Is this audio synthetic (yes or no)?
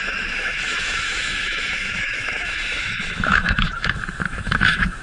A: yes